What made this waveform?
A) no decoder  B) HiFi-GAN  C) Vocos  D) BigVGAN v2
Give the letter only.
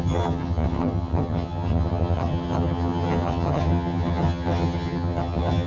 B